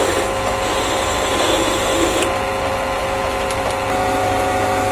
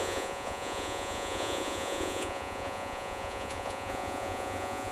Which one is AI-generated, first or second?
second